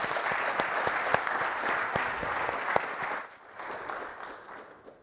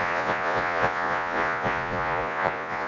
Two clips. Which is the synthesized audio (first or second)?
second